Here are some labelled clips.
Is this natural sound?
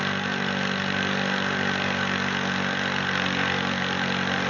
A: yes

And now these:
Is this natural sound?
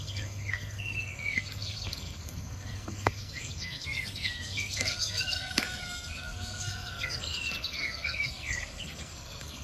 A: no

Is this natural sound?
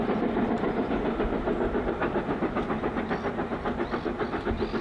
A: yes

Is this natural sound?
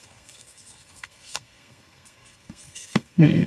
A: no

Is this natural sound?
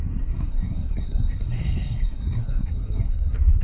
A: no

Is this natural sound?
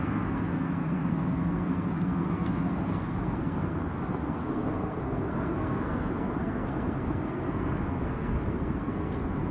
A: no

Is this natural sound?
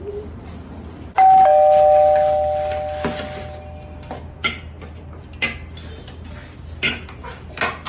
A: yes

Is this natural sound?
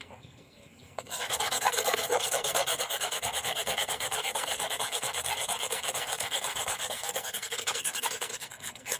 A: no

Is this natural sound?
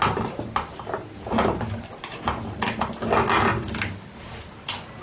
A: yes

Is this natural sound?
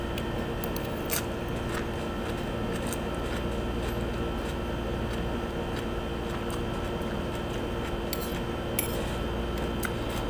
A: yes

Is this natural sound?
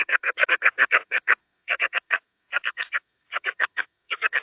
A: no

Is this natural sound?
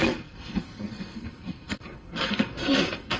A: no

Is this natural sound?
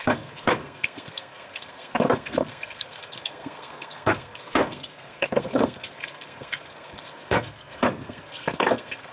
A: no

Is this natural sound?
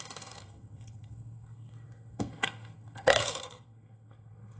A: no